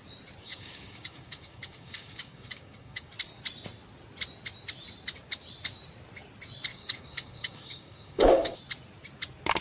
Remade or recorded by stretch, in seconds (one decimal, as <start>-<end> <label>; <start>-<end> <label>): 0.0-0.4 recorded; 0.4-3.1 remade; 3.1-6.7 recorded; 6.7-8.6 remade; 8.6-9.6 recorded